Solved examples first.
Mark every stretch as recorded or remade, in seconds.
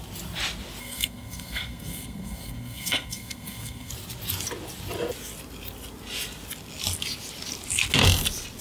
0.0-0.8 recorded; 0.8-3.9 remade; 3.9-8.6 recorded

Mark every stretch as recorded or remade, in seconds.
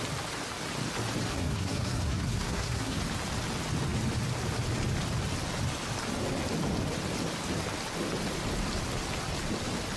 0.0-1.3 recorded; 1.3-3.0 remade; 3.0-10.0 recorded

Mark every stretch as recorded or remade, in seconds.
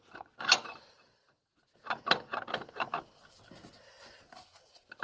0.0-5.0 recorded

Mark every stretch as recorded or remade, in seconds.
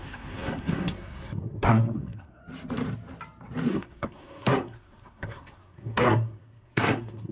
0.0-2.4 remade; 2.4-3.7 recorded; 3.7-7.3 remade